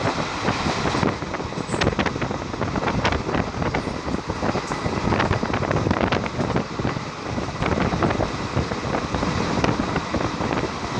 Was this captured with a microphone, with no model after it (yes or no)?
yes